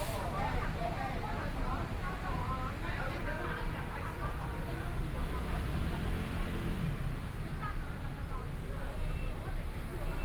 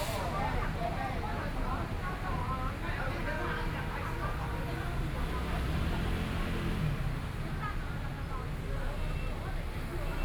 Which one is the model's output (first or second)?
first